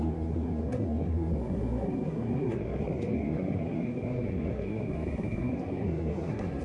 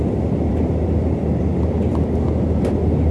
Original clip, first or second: second